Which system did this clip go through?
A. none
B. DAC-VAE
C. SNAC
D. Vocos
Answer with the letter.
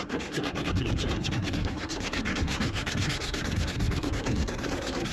C